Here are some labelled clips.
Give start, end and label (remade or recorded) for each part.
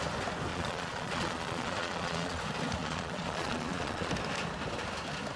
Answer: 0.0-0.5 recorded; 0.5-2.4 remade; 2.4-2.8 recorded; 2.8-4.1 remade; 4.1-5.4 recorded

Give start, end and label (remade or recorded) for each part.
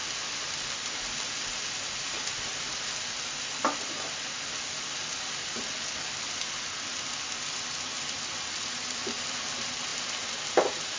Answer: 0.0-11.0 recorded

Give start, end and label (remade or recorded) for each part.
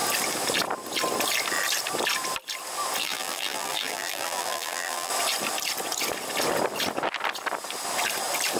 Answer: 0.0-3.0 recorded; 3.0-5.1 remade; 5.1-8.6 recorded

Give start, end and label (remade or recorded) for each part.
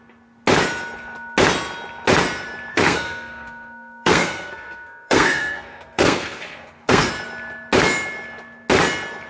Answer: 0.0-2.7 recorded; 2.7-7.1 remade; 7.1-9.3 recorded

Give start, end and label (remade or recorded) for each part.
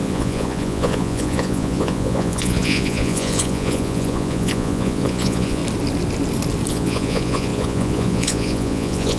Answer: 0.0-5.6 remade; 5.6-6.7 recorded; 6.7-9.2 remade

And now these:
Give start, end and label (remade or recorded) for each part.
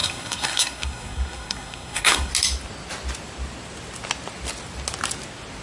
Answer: 0.0-2.3 remade; 2.3-5.6 recorded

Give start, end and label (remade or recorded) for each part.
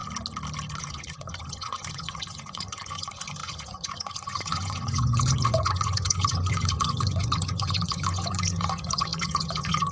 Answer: 0.0-0.8 recorded; 0.8-9.9 remade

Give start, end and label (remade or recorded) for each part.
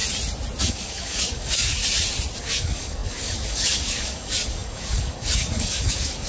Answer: 0.0-0.6 recorded; 0.6-1.8 remade; 1.8-2.4 recorded; 2.4-6.3 remade